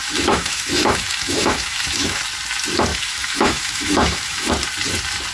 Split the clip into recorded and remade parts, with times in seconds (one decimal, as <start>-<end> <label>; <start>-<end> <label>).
0.0-2.2 remade; 2.2-2.9 recorded; 2.9-4.5 remade; 4.5-5.3 recorded